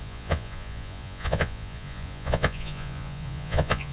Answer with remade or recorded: remade